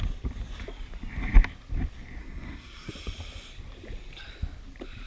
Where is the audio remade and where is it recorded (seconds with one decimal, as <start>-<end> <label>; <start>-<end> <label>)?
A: 0.0-2.2 recorded; 2.2-2.9 remade; 2.9-5.1 recorded